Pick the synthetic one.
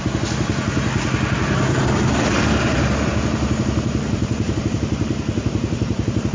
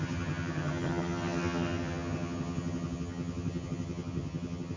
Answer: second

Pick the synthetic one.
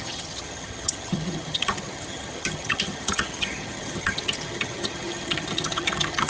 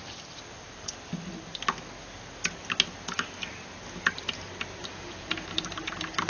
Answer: first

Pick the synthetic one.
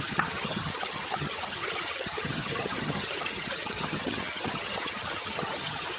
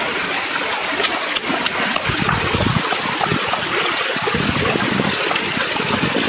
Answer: first